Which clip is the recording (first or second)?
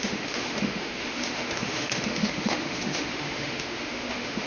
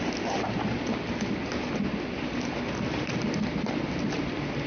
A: second